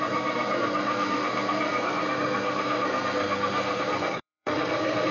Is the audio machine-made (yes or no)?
yes